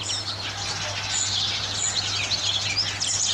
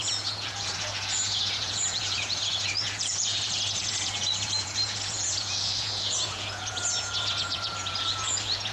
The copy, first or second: second